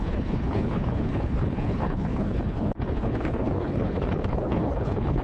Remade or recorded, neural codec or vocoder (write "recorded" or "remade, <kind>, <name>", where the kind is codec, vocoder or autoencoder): remade, codec, HILCodec